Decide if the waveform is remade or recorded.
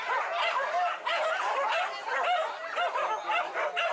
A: recorded